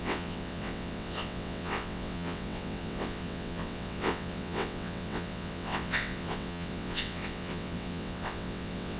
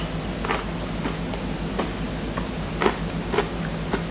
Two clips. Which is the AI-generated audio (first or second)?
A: first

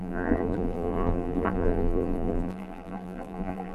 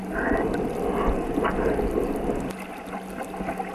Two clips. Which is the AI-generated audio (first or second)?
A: first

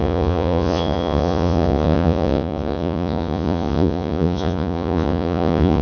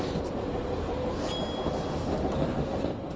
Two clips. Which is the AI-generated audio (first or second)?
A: first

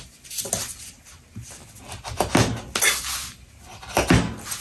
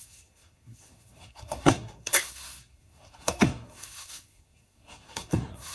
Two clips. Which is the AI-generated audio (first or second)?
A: second